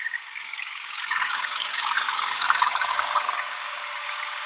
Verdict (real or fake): fake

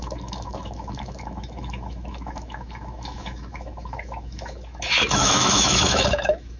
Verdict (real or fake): fake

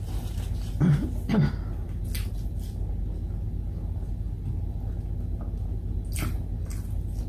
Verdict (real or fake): real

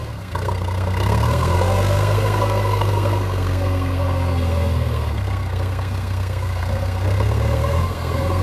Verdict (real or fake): fake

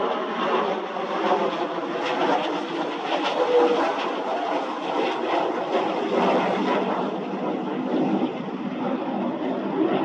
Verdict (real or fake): real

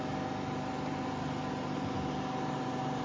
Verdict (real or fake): real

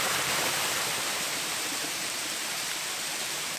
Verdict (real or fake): fake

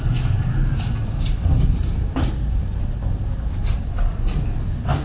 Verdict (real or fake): real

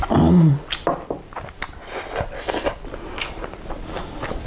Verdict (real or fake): real